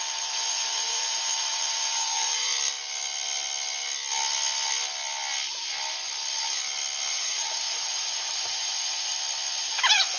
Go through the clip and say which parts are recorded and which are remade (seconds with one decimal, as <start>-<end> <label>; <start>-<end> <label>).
0.0-2.5 remade; 2.5-7.1 recorded; 7.1-9.1 remade; 9.1-9.6 recorded; 9.6-10.2 remade